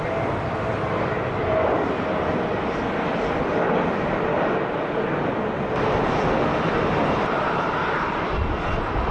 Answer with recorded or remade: recorded